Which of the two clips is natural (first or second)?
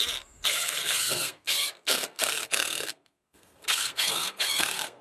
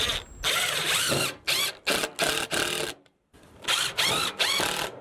second